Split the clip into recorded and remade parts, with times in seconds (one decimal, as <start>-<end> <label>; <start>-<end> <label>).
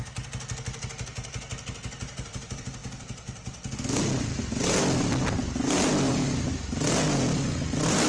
0.0-8.1 recorded